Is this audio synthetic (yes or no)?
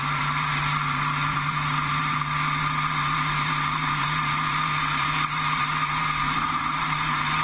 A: yes